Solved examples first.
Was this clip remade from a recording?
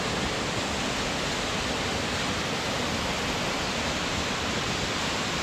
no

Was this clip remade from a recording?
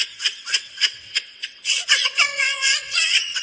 yes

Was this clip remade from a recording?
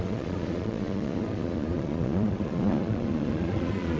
yes